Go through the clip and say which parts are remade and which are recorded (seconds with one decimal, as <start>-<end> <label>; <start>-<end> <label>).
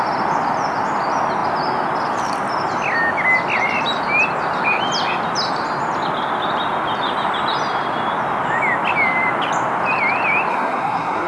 0.0-10.5 recorded; 10.5-11.3 remade